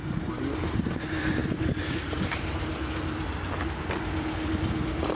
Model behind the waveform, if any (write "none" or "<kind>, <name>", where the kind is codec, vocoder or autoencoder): none